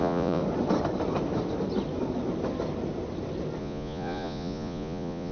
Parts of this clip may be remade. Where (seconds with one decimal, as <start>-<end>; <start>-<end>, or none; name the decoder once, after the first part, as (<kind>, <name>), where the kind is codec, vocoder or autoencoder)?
0.0-0.4 (vocoder, Vocos); 3.6-5.3